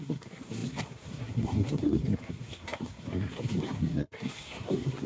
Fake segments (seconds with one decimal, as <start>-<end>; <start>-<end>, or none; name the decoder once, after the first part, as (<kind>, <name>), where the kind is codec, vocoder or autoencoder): 0.0-5.1 (codec, SNAC)